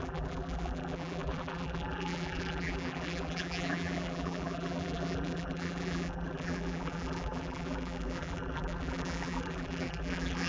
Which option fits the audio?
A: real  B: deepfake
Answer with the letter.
B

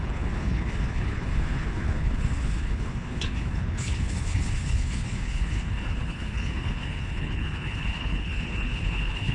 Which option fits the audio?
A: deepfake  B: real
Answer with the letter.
A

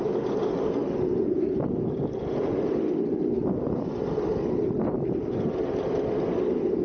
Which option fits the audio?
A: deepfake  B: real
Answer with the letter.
B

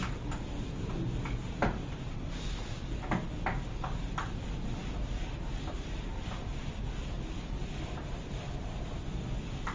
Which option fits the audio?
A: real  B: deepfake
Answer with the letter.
A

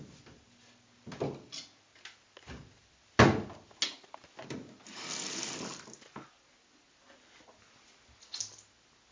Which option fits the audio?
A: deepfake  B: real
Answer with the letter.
B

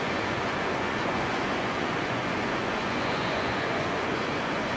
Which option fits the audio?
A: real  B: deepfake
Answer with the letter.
B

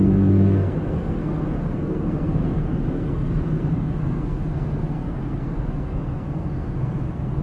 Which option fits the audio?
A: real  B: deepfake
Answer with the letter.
B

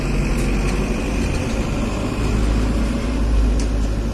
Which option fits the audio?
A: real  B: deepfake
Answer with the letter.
A